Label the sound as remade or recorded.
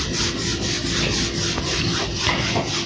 recorded